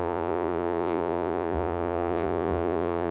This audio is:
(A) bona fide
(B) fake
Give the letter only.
B